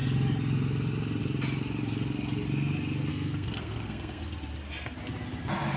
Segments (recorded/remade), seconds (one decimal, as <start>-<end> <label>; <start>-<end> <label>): 0.0-3.1 recorded; 3.1-4.2 remade; 4.2-5.8 recorded